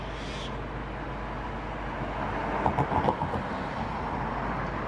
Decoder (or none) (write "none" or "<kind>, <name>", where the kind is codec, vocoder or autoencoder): none